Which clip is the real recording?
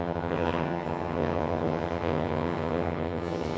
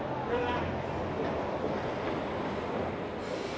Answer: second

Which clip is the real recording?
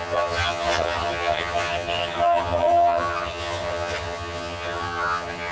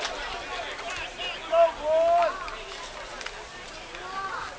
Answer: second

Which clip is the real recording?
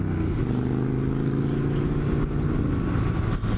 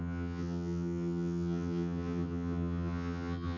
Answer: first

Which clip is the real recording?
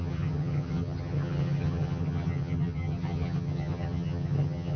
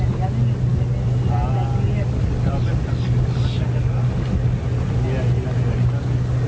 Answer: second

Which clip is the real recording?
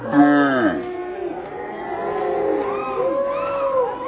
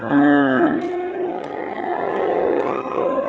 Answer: first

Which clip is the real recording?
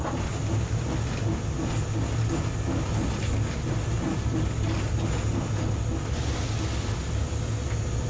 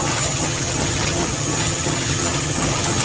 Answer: first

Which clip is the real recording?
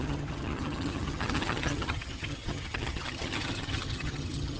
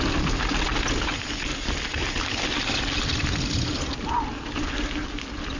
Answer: second